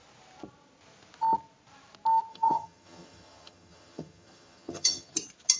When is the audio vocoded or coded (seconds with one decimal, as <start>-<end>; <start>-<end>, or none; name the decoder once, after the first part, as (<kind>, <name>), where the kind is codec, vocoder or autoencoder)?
2.3-5.1 (vocoder, HiFi-GAN)